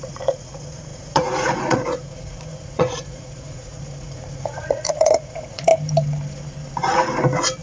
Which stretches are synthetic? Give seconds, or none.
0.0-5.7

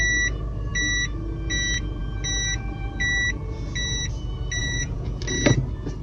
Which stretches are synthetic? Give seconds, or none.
4.6-5.2

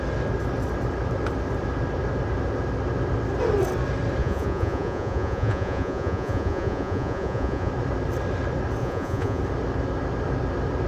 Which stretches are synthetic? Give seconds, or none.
4.2-7.7; 8.8-9.4

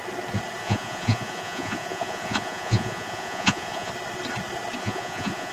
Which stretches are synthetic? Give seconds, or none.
0.6-3.9; 4.8-5.5

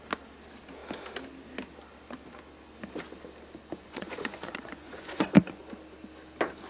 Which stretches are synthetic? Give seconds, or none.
3.8-5.6

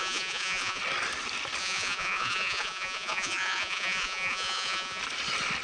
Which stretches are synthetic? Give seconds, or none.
0.0-0.8; 1.6-5.0

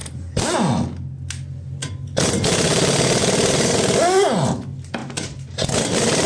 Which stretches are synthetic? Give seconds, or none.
none

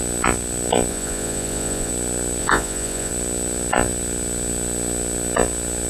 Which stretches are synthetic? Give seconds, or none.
0.9-1.9; 2.4-3.1